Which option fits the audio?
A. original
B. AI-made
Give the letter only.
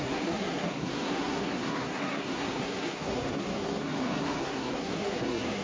B